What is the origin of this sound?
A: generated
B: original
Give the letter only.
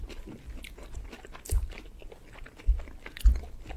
B